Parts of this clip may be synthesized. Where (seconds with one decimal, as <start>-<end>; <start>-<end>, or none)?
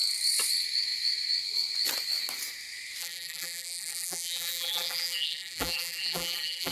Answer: 3.0-6.7